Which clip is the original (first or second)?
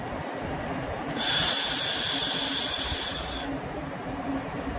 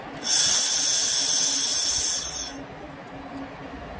second